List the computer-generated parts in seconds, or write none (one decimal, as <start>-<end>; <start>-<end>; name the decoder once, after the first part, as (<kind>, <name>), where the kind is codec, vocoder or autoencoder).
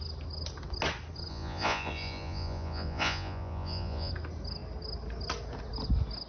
1.3-4.1 (vocoder, Vocos)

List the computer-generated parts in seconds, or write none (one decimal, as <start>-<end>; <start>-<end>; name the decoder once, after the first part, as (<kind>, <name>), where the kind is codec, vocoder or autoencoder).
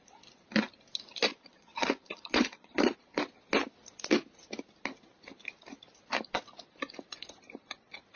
1.3-3.2 (vocoder, Vocos)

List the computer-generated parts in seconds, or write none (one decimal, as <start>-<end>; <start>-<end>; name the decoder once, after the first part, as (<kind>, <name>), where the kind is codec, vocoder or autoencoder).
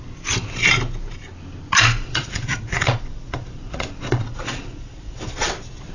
2.0-5.5 (vocoder, Vocos)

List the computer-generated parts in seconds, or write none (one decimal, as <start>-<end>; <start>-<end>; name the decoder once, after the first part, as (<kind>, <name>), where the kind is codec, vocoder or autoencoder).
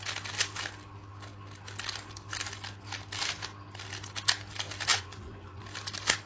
4.9-5.6 (vocoder, Vocos)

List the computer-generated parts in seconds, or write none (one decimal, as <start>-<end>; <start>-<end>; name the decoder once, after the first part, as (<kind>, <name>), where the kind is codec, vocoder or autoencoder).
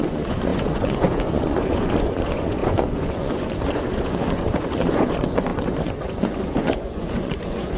0.0-7.8 (vocoder, Vocos)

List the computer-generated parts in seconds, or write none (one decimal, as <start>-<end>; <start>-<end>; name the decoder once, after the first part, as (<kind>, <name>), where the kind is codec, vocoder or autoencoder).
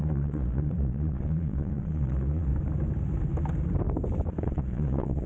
0.0-2.5 (vocoder, Vocos); 4.4-5.3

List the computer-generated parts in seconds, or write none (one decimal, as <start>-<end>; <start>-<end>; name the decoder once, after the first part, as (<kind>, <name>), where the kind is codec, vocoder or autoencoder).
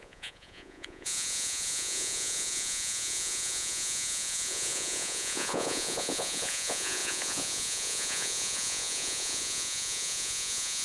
0.0-10.8 (vocoder, Vocos)